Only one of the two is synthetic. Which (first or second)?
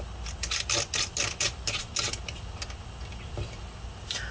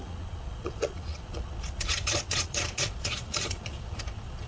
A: second